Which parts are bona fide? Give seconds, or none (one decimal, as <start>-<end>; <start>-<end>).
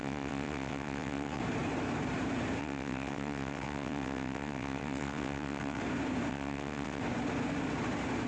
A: 1.4-2.6; 5.8-6.3; 7.0-8.3